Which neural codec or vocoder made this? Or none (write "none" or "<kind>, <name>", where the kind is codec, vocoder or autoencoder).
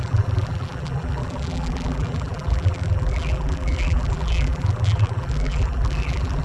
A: vocoder, BigVGAN v2